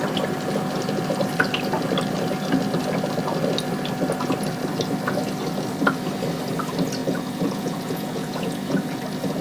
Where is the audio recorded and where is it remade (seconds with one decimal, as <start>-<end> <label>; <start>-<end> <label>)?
0.0-7.0 recorded; 7.0-9.0 remade; 9.0-9.4 recorded